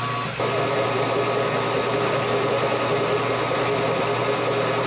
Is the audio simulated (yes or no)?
no